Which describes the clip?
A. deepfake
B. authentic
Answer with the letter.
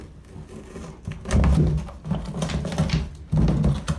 B